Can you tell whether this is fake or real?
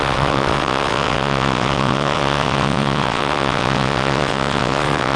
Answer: fake